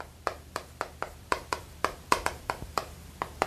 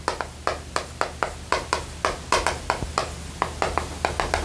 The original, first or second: second